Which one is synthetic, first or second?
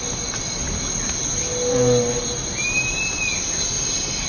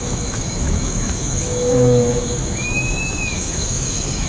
second